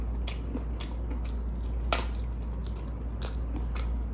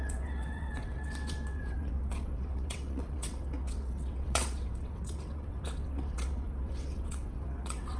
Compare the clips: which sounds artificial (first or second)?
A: second